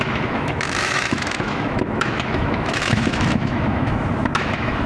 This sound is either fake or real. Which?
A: fake